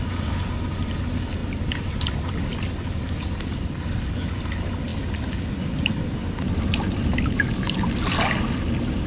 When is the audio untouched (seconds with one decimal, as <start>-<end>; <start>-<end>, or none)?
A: 0.0-9.1